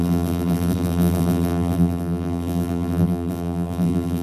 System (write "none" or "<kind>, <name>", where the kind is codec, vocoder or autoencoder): vocoder, BigVGAN v2